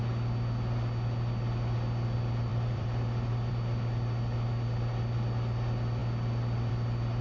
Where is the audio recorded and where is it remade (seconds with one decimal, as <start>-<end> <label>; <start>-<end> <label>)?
0.0-2.5 recorded; 2.5-3.5 remade; 3.5-7.2 recorded